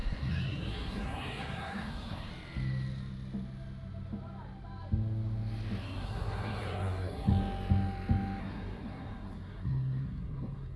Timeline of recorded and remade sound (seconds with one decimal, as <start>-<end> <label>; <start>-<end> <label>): 0.0-2.3 remade; 2.3-5.8 recorded; 5.8-7.3 remade; 7.3-8.4 recorded; 8.4-10.8 remade

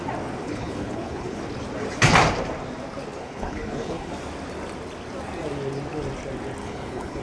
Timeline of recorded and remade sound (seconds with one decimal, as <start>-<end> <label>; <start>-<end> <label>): 0.0-0.4 recorded; 0.4-1.4 remade; 1.4-3.2 recorded; 3.2-4.1 remade; 4.1-6.6 recorded; 6.6-7.2 remade

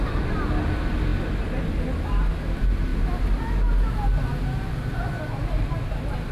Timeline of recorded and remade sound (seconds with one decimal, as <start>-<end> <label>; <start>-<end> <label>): 0.0-6.3 recorded

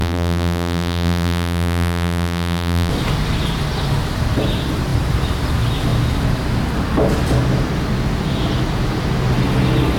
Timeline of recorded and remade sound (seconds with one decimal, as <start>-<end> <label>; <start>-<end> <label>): 0.0-2.9 remade; 2.9-10.0 recorded

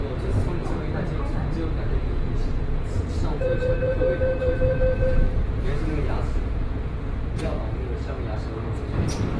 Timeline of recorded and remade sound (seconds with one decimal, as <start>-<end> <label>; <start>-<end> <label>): 0.0-1.9 recorded; 1.9-7.0 remade; 7.0-9.4 recorded

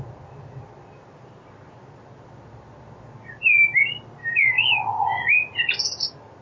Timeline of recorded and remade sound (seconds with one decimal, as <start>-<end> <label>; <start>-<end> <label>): 0.0-4.2 recorded; 4.2-5.2 remade; 5.2-6.4 recorded

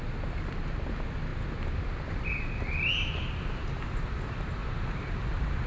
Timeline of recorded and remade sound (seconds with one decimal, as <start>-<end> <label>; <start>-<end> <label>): 0.0-4.6 recorded; 4.6-5.7 remade